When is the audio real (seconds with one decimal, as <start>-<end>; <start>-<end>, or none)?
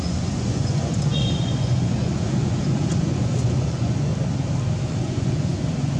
4.1-4.8